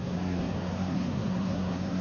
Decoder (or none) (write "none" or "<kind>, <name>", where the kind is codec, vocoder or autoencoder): codec, SNAC